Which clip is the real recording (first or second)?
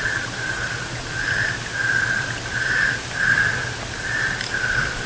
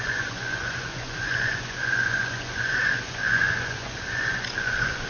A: first